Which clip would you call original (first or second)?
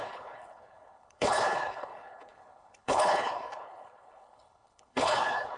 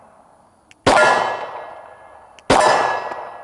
second